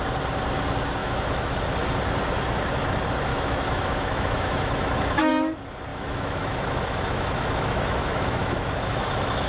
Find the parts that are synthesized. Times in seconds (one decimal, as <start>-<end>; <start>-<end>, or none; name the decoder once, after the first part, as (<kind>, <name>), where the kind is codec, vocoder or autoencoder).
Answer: 1.0-1.6 (autoencoder, DAC-VAE); 3.3-5.3; 5.9-9.5